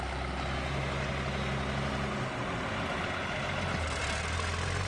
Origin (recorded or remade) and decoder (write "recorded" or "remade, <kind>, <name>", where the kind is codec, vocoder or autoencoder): recorded